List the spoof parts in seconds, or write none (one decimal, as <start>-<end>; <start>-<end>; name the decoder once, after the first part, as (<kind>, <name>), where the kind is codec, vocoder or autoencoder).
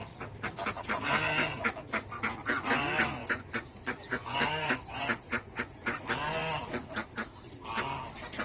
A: 3.2-6.0 (vocoder, Vocos)